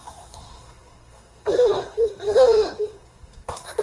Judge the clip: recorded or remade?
remade